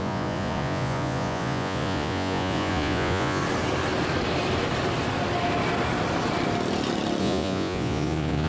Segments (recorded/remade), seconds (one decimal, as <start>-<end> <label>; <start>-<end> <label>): 0.0-3.4 remade; 3.4-7.2 recorded; 7.2-8.5 remade